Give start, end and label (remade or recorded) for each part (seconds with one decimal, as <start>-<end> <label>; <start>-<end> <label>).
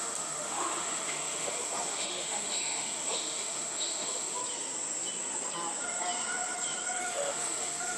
0.0-4.4 remade; 4.4-7.0 recorded; 7.0-8.0 remade